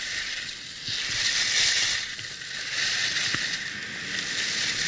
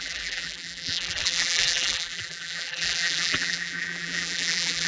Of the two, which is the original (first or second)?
first